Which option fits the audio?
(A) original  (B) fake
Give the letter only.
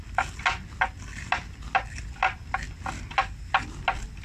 A